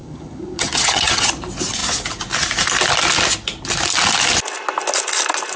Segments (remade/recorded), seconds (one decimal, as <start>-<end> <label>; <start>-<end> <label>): 0.0-1.3 remade; 1.3-5.6 recorded